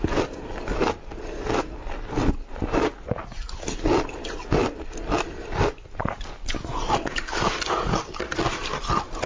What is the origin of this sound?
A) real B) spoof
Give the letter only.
A